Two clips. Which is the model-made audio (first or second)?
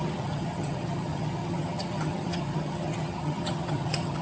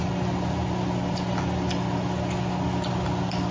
first